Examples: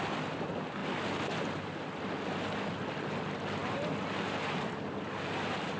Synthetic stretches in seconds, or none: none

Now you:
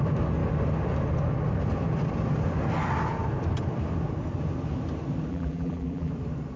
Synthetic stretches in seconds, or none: 5.3-6.1

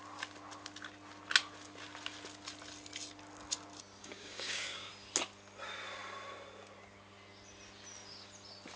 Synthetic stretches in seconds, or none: 4.0-4.9